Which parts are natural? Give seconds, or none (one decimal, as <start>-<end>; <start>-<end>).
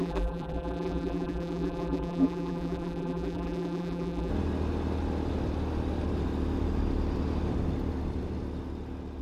4.3-9.2